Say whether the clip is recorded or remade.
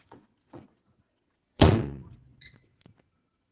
remade